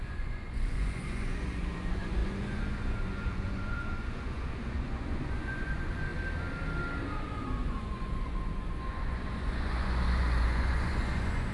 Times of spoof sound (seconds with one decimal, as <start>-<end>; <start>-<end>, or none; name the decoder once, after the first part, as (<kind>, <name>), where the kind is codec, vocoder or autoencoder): 0.0-6.1 (vocoder, Vocos); 7.1-11.5